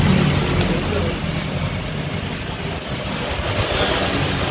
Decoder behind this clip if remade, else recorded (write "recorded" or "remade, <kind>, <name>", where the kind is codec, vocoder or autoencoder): recorded